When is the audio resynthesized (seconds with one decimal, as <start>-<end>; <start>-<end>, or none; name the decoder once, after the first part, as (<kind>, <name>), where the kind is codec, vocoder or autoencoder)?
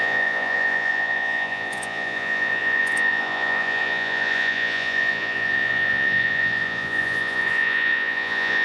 0.0-8.6 (vocoder, Vocos)